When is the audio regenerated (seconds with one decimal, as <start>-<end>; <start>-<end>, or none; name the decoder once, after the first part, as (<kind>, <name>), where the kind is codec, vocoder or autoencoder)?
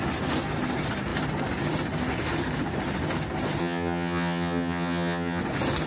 3.6-5.4 (vocoder, HiFi-GAN)